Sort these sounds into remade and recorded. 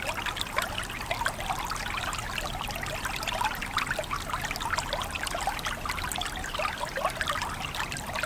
recorded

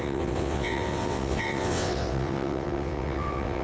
remade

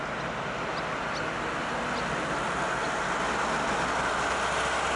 recorded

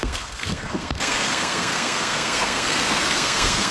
remade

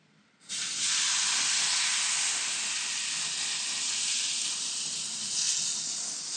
recorded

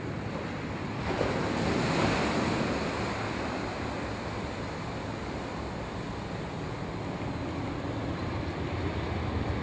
recorded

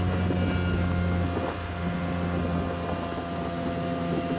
recorded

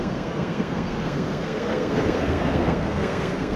remade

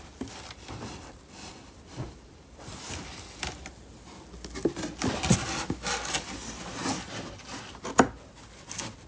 recorded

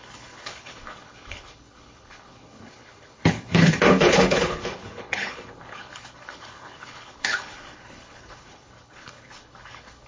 remade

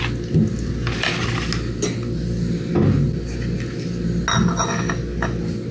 recorded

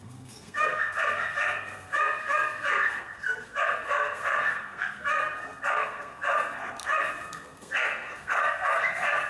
remade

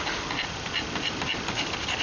recorded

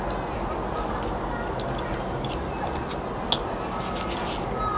recorded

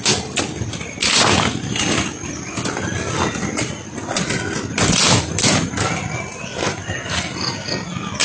recorded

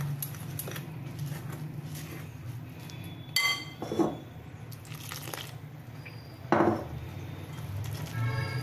recorded